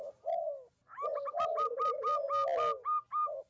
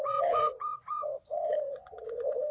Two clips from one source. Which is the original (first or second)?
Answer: first